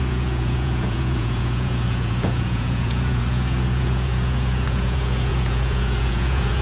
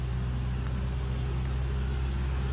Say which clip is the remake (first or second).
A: first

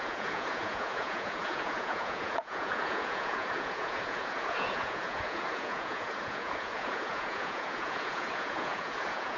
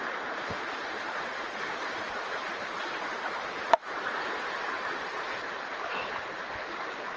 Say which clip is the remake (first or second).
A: first